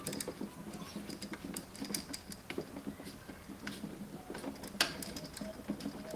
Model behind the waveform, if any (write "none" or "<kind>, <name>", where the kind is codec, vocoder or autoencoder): none